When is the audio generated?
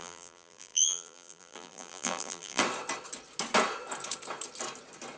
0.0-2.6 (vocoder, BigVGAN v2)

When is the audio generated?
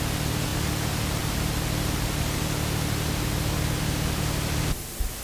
none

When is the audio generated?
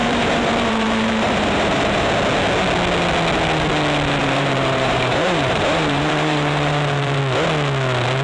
0.0-2.1 (vocoder, BigVGAN v2); 4.2-7.2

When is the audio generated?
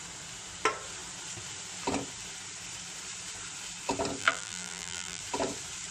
4.2-5.2 (vocoder, BigVGAN v2)